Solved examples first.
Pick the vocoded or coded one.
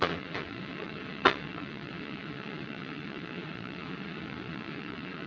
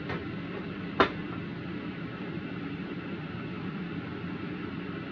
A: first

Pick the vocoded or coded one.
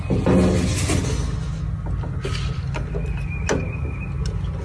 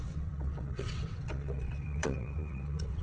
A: second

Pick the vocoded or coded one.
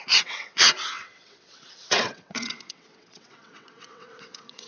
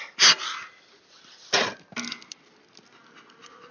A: first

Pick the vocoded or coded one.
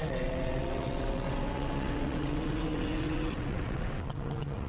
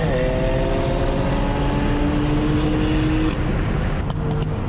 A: first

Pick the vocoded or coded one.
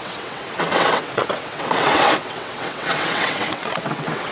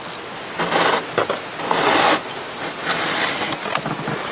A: first